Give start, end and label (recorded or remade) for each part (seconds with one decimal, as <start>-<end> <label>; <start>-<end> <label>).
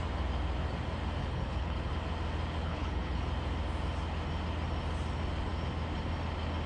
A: 0.0-1.2 recorded; 1.2-1.9 remade; 1.9-2.6 recorded; 2.6-3.2 remade; 3.2-6.7 recorded